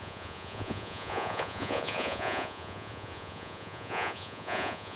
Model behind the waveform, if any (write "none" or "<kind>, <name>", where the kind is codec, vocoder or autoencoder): vocoder, Vocos